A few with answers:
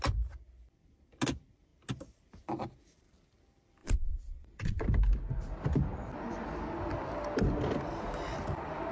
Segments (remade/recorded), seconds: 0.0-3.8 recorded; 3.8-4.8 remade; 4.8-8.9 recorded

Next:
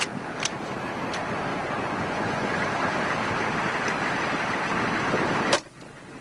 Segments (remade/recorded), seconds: 0.0-1.5 recorded; 1.5-2.5 remade; 2.5-6.2 recorded

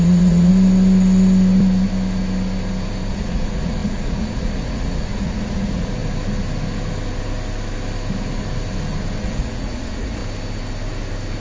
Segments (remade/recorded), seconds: 0.0-0.5 remade; 0.5-3.1 recorded; 3.1-6.0 remade; 6.0-9.2 recorded; 9.2-10.2 remade; 10.2-11.4 recorded